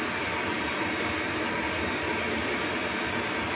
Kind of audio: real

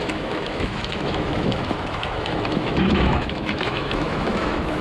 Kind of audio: fake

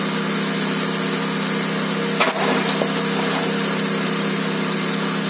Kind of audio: real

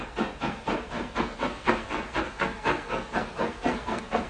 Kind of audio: fake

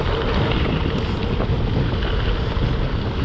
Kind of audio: real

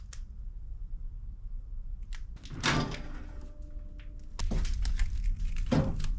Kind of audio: real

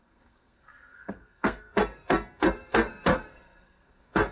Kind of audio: fake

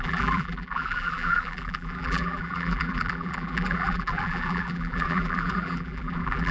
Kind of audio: fake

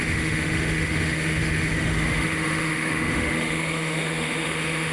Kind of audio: fake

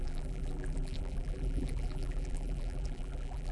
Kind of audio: fake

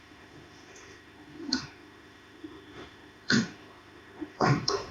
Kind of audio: fake